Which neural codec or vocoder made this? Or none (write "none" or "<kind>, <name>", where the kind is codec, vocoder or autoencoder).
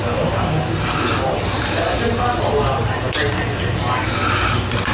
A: none